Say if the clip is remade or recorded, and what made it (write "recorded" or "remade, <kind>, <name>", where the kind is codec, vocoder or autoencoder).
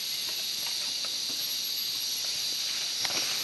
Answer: recorded